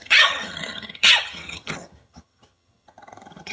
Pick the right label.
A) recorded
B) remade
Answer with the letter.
B